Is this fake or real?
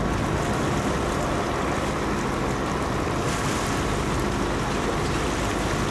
real